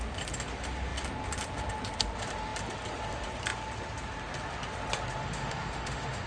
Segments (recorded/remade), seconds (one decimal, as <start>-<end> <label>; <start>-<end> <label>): 0.0-5.2 recorded; 5.2-6.3 remade